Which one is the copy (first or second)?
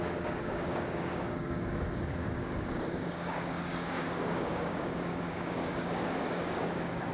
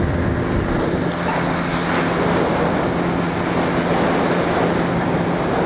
first